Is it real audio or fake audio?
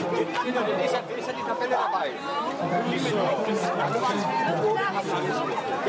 real